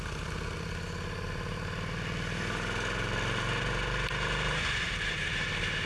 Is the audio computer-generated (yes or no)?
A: no